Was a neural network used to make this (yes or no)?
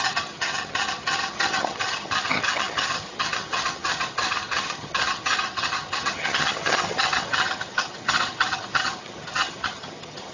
yes